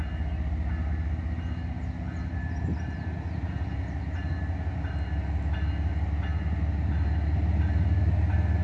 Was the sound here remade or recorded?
recorded